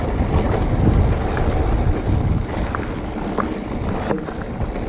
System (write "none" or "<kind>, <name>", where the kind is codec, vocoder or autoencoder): none